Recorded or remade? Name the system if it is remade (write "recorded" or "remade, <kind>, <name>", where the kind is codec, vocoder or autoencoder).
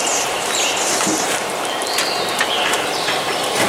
remade, vocoder, BigVGAN v2